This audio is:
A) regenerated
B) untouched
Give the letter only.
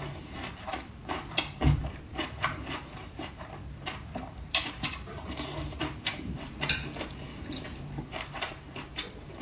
A